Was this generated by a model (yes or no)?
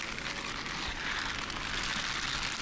no